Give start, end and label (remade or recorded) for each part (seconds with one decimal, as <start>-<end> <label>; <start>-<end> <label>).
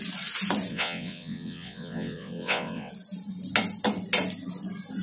0.0-0.7 recorded; 0.7-2.9 remade; 2.9-5.0 recorded